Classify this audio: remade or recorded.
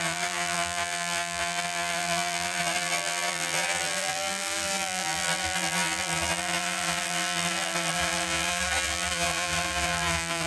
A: remade